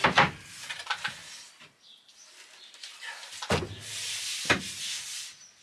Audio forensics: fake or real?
real